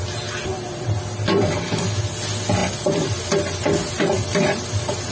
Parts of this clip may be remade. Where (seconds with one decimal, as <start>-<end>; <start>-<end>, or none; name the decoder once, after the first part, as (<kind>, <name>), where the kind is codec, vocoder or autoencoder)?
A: none